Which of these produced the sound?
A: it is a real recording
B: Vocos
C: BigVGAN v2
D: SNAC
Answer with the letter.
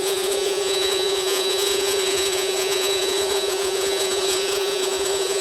B